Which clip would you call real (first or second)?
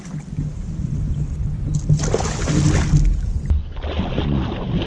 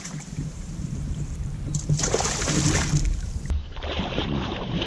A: first